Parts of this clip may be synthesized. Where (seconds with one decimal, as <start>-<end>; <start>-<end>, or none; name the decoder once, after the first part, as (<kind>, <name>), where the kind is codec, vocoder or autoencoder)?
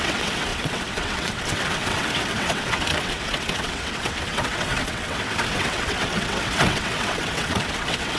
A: 0.0-8.2 (vocoder, WaveNeXt)